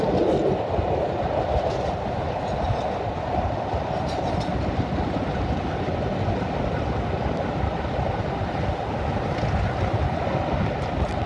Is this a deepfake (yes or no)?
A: no